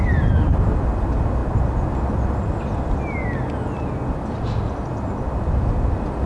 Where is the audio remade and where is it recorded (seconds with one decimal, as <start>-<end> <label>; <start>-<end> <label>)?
0.0-6.3 recorded